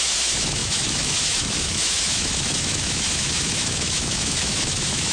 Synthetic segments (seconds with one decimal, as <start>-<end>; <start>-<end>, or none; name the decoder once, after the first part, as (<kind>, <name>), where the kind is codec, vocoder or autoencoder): 0.0-5.1 (autoencoder, DAC-VAE)